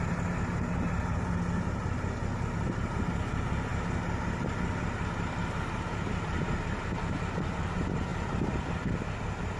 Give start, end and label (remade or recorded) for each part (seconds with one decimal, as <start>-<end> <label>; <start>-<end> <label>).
0.0-9.6 recorded